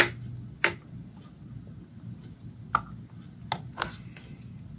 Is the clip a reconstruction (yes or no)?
no